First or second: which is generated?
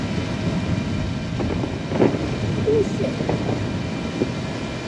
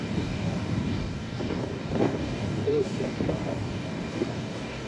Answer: second